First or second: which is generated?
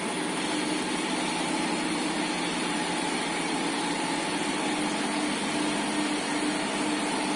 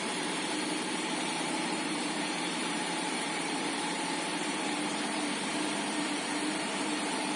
second